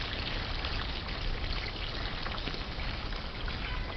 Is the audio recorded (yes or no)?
yes